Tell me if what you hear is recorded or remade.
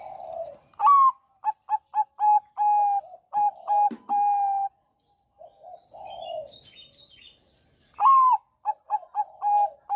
recorded